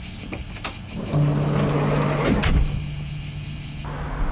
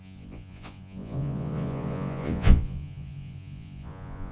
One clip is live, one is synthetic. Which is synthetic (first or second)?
second